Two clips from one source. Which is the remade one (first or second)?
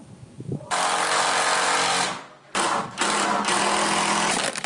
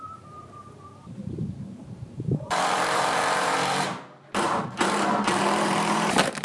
second